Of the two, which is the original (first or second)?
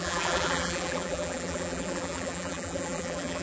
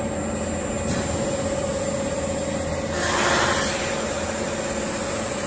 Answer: second